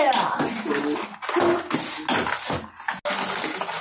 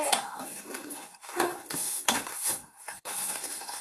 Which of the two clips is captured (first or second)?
first